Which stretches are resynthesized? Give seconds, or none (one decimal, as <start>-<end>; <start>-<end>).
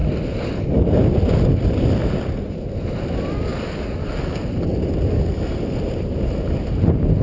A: none